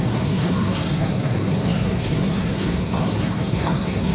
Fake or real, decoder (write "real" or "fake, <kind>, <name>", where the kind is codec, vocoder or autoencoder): fake, codec, SNAC